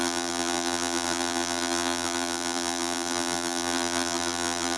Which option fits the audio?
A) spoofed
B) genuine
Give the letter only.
A